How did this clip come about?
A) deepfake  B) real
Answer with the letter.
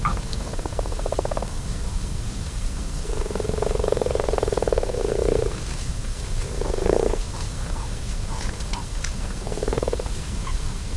A